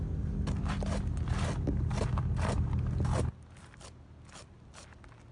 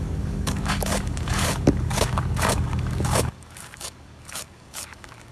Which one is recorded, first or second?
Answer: first